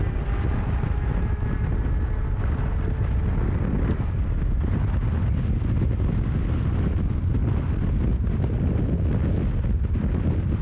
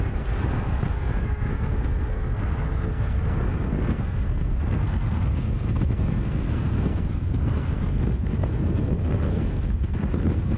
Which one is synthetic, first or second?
second